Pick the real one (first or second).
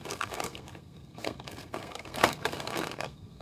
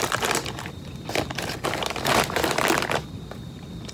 second